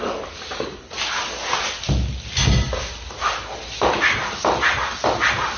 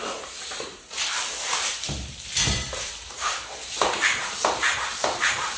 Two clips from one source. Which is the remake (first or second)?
second